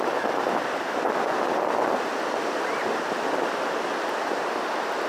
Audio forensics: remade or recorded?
remade